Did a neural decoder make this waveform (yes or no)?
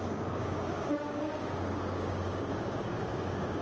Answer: yes